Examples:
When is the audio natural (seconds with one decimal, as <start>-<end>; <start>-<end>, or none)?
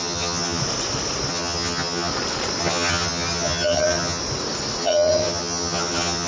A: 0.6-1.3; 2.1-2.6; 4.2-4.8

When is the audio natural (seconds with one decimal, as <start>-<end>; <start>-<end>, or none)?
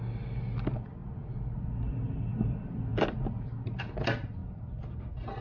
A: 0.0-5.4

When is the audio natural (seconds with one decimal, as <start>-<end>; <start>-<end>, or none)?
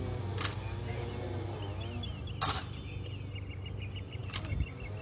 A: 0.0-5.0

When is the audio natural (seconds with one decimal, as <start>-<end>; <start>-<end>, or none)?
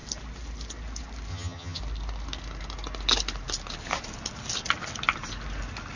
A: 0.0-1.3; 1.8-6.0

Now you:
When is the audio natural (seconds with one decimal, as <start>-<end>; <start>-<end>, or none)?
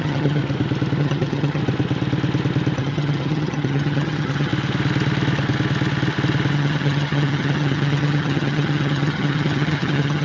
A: 0.4-1.0; 1.6-2.8; 4.5-6.5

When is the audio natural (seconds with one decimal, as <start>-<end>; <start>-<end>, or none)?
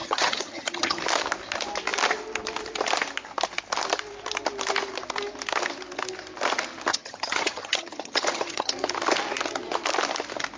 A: 1.0-6.9; 8.7-10.6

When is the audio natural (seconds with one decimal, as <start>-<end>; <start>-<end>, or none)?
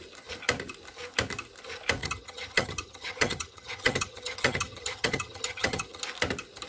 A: 0.0-2.0; 6.0-6.7